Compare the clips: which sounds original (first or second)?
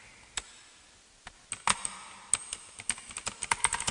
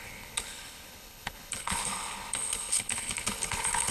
first